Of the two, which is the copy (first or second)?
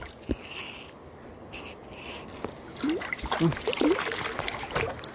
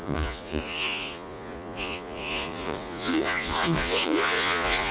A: second